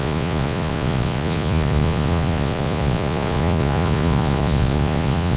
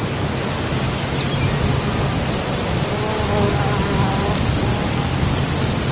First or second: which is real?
second